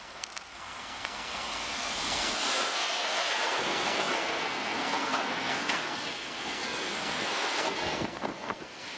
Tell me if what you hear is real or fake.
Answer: fake